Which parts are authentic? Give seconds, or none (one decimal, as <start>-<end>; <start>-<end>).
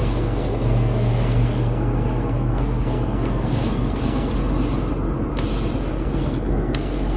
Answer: 4.3-5.9